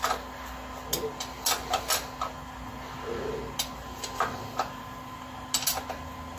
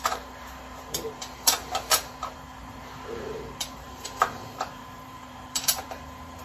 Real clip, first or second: first